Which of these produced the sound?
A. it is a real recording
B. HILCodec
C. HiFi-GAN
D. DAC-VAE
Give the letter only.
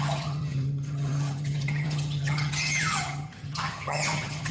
C